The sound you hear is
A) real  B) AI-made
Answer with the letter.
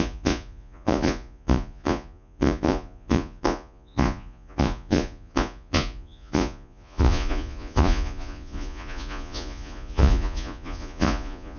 B